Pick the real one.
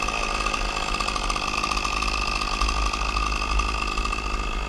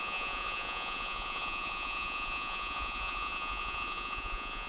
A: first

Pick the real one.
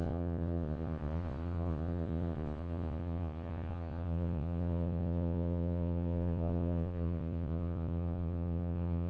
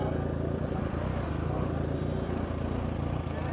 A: second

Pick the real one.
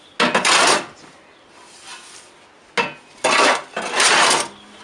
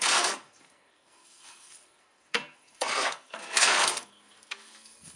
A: first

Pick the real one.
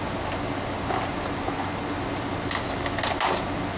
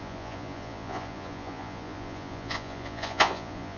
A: first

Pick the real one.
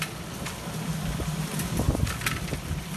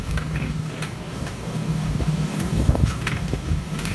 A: first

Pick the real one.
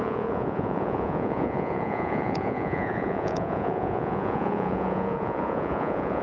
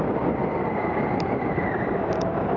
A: second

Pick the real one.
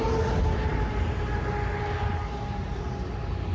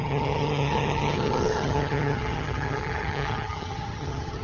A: first